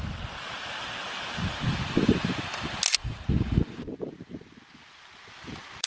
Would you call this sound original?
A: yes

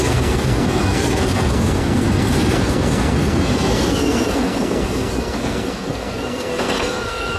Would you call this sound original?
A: no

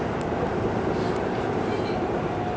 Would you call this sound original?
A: yes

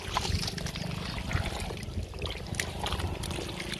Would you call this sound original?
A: yes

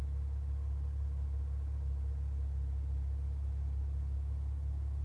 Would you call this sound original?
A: yes